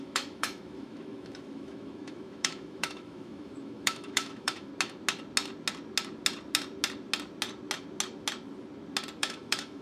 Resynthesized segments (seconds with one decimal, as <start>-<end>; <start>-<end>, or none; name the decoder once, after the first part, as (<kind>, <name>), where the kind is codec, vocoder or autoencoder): 0.0-4.7 (autoencoder, DAC-VAE); 9.2-9.8